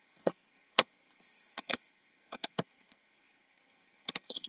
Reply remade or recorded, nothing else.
remade